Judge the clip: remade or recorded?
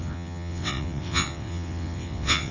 remade